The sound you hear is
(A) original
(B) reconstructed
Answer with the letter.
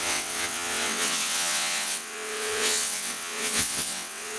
B